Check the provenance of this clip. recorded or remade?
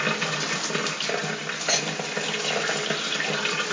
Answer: recorded